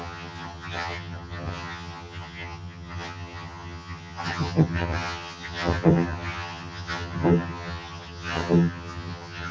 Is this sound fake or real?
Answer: fake